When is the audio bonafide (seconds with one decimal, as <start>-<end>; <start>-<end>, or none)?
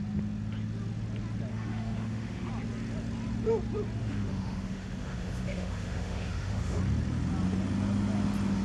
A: 0.0-1.5; 2.5-4.0; 6.8-8.6